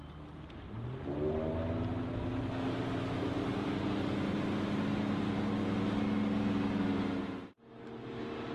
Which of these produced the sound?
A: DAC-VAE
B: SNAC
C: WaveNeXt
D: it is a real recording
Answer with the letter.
D